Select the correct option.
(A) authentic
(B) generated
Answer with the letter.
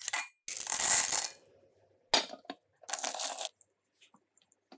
A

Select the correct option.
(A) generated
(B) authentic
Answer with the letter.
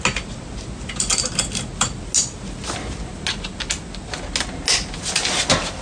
B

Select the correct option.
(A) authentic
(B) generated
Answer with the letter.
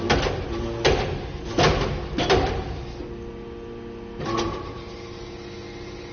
A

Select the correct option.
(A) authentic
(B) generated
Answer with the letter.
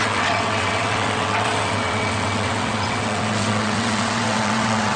B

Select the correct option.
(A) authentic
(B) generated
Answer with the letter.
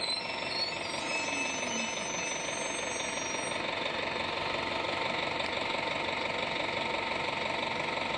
A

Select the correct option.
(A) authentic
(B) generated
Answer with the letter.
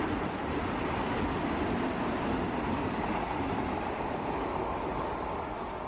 A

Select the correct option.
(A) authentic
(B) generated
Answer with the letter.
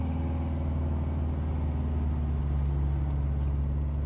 A